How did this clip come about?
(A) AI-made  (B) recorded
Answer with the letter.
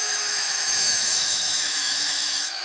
A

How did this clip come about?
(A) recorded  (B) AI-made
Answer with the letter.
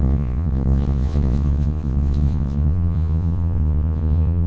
B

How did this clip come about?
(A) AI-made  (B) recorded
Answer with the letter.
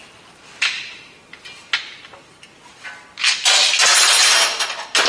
B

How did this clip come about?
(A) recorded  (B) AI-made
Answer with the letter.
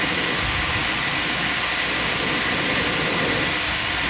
A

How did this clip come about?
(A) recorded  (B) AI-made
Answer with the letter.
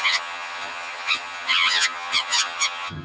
B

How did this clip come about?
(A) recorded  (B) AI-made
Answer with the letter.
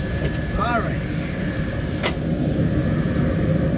A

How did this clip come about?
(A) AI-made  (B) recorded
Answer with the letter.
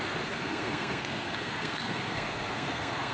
A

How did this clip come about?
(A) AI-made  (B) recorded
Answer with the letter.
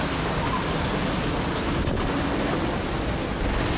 B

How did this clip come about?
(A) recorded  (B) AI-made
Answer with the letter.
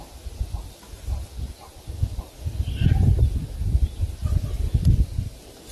A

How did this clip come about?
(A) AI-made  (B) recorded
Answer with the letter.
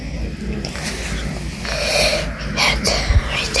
B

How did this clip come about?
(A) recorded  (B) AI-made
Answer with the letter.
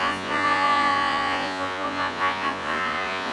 B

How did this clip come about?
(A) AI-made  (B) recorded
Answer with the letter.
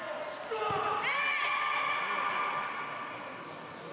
B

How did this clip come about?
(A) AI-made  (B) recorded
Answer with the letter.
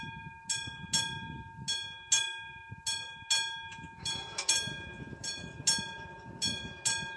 B